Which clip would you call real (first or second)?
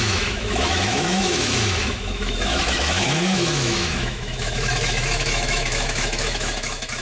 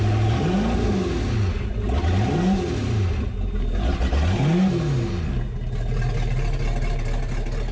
second